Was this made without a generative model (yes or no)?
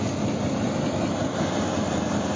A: yes